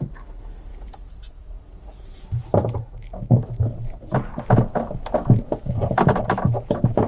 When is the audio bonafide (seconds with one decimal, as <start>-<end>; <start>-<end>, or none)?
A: 0.0-0.7; 2.4-7.1